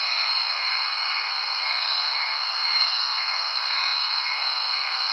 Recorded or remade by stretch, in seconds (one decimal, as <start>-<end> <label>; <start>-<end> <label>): 0.0-5.1 remade

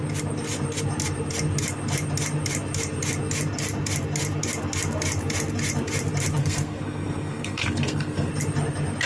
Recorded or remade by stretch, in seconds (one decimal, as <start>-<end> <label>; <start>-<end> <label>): 0.0-6.4 recorded; 6.4-8.3 remade; 8.3-9.1 recorded

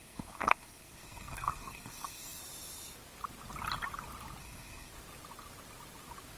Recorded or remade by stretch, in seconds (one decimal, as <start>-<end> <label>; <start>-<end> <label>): 0.0-2.4 remade; 2.4-4.4 recorded; 4.4-4.9 remade; 4.9-6.4 recorded

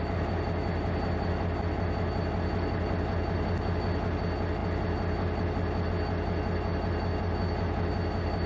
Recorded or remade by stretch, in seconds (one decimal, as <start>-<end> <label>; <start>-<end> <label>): 0.0-8.5 recorded